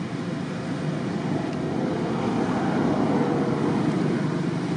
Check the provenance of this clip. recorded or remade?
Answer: recorded